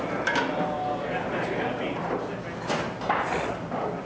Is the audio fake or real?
real